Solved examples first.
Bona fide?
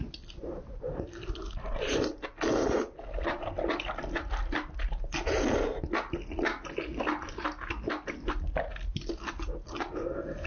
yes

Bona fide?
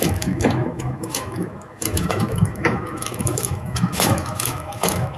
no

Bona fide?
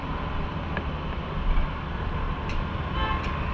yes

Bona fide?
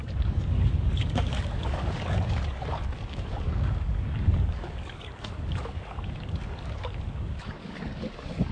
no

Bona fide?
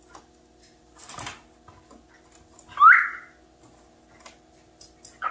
yes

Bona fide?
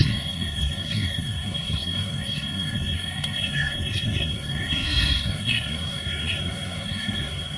no